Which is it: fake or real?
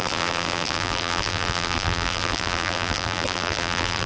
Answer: fake